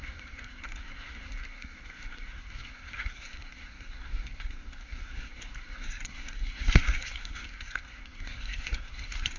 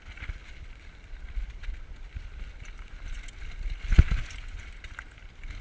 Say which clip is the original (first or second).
second